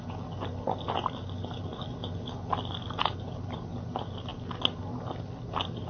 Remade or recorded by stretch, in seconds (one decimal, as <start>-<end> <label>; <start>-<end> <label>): 0.0-5.9 recorded